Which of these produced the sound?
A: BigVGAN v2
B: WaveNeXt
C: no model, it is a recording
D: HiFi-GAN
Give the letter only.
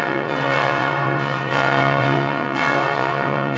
B